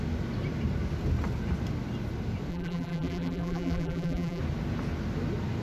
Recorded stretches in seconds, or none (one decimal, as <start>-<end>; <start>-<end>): 0.0-2.5; 4.4-5.6